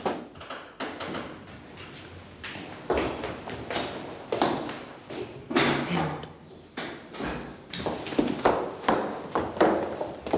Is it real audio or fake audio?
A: real